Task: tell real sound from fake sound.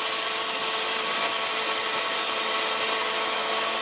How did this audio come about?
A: real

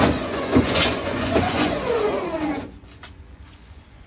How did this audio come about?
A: fake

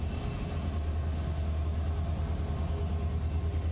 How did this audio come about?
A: real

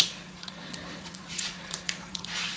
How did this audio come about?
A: fake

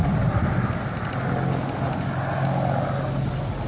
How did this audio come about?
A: real